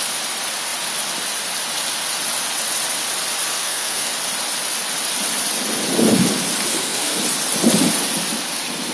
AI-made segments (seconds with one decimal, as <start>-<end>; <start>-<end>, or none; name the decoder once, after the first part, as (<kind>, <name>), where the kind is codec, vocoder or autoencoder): 3.6-4.1 (codec, SNAC); 6.7-7.2